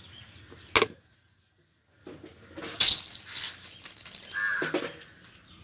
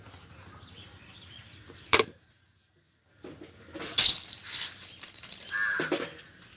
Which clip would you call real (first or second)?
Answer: first